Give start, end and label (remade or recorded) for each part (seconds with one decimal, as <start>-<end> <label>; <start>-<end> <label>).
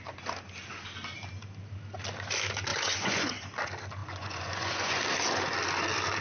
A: 0.0-2.7 recorded; 2.7-3.3 remade; 3.3-4.0 recorded; 4.0-5.0 remade; 5.0-6.2 recorded